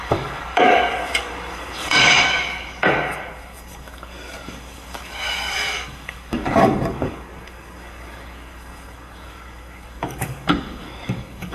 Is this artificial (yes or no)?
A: yes